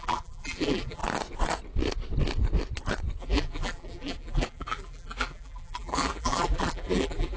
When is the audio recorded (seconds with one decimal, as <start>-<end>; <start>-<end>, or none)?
1.0-3.2